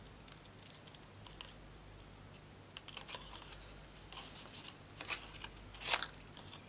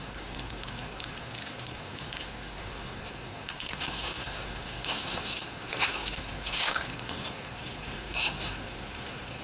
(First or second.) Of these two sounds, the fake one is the second